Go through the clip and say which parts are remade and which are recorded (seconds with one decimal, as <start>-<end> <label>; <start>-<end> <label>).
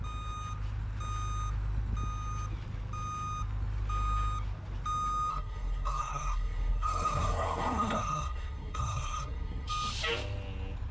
0.0-5.3 recorded; 5.3-9.7 remade; 9.7-10.9 recorded